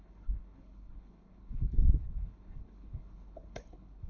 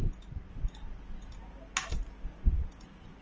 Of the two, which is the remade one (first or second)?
first